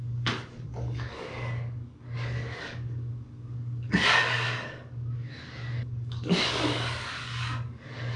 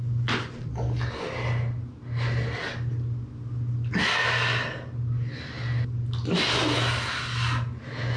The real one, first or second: second